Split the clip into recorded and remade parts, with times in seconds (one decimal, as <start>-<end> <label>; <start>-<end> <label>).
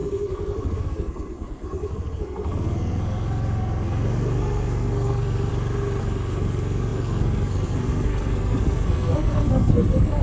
0.0-5.5 remade; 5.5-6.0 recorded; 6.0-10.2 remade